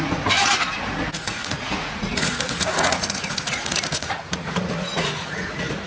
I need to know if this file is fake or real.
fake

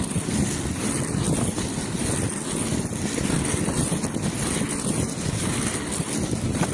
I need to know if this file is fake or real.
real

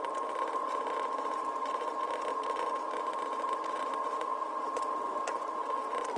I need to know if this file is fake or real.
real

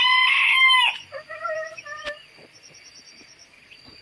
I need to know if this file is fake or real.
real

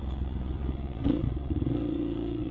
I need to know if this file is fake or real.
fake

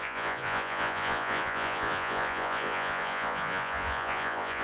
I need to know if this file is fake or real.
fake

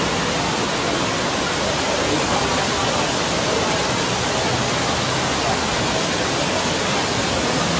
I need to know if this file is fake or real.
real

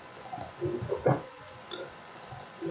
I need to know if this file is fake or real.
fake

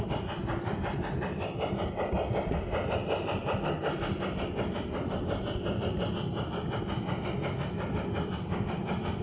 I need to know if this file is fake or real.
real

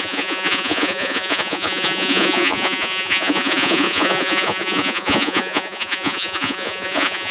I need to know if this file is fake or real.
fake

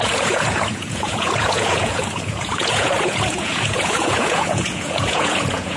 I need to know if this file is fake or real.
fake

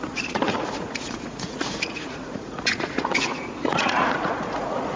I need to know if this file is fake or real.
fake